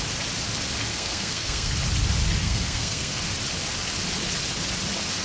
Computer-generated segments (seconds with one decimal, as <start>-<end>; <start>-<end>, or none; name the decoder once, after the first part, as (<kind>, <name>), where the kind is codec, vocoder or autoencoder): 0.9-1.7 (codec, SNAC); 2.4-3.2